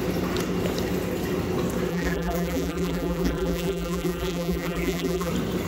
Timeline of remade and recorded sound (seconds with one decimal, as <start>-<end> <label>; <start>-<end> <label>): 0.0-1.9 recorded; 1.9-5.3 remade; 5.3-5.7 recorded